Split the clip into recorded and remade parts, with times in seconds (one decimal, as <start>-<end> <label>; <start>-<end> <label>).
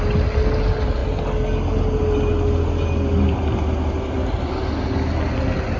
0.0-5.8 recorded